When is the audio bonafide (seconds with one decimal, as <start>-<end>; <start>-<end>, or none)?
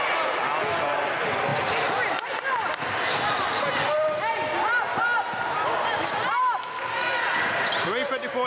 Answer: 0.0-8.5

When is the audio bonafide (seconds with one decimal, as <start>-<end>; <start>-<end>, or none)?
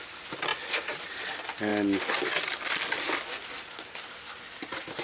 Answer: 0.0-5.0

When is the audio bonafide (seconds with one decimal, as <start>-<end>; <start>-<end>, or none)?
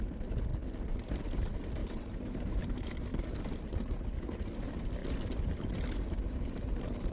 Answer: 0.5-1.3; 5.0-7.1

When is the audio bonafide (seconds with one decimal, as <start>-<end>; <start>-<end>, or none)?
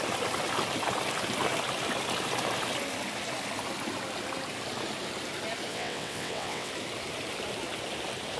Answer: 0.0-5.7; 6.7-8.4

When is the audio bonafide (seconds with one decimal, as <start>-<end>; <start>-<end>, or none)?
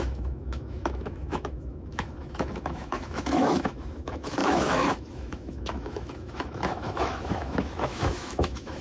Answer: none